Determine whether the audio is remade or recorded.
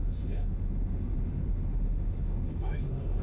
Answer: remade